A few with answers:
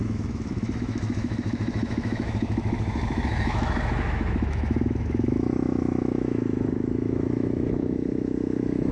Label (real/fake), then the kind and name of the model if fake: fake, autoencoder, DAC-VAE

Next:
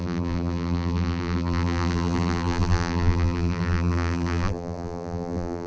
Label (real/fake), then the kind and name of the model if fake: fake, vocoder, BigVGAN v2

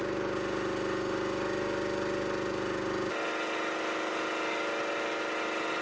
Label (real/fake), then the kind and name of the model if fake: real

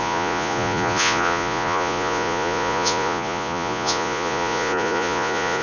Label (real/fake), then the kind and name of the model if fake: fake, vocoder, Vocos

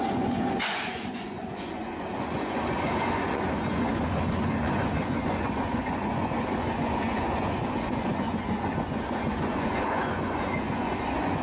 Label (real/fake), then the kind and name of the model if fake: fake, vocoder, Vocos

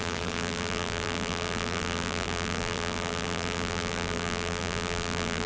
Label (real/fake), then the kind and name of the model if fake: fake, vocoder, BigVGAN v2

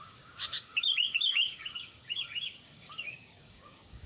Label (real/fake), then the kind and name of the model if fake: fake, codec, DAC